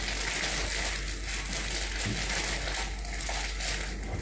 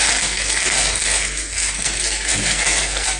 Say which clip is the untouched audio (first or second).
first